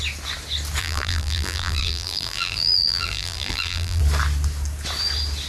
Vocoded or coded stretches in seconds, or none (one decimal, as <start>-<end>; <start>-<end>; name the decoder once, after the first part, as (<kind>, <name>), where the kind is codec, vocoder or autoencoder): 0.8-4.0 (vocoder, BigVGAN v2)